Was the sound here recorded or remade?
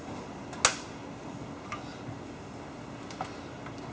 recorded